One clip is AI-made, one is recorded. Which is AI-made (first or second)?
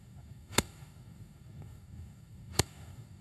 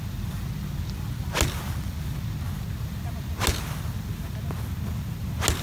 first